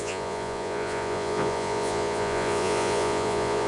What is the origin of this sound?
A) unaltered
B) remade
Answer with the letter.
B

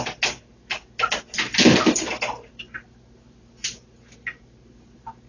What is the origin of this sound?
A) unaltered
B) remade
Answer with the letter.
A